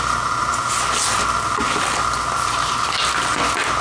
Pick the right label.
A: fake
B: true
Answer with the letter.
B